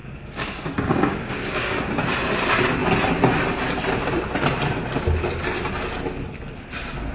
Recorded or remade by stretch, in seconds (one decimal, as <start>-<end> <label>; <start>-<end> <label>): 0.0-1.8 remade; 1.8-7.1 recorded